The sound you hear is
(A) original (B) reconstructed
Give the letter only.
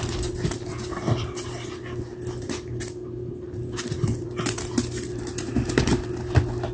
A